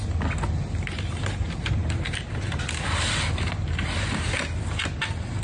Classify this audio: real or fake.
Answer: real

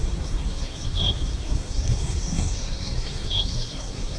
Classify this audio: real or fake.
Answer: fake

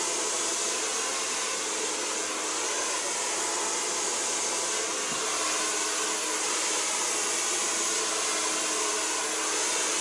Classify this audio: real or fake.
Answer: real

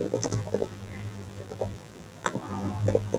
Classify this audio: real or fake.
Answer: fake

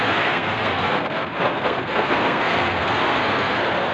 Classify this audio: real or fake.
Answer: fake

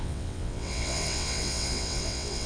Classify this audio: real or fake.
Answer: fake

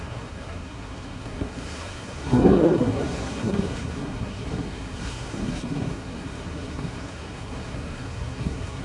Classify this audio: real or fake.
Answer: fake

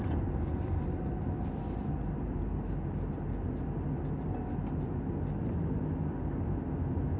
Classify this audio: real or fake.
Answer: real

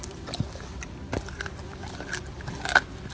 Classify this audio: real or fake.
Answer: real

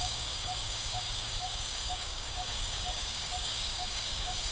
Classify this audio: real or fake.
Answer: fake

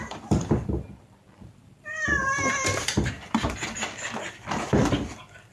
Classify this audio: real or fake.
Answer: fake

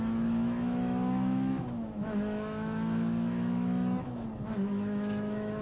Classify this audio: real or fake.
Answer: fake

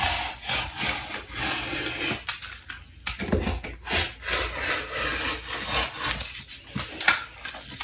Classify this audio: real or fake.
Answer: real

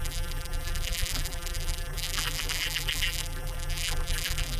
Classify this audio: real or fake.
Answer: fake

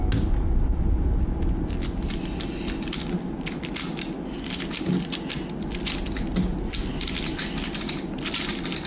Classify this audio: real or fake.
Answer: real